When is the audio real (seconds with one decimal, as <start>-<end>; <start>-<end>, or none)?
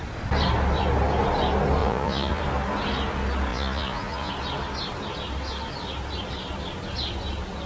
0.0-1.8; 2.4-3.5; 4.3-7.7